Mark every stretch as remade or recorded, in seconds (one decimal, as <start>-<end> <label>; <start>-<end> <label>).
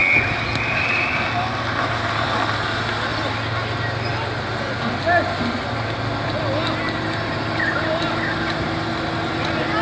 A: 0.0-9.8 recorded